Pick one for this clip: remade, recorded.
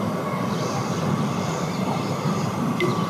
remade